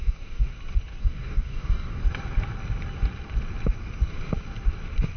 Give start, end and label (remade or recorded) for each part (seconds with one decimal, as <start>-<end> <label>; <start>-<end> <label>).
0.0-0.5 remade; 0.5-1.0 recorded; 1.0-2.0 remade; 2.0-5.2 recorded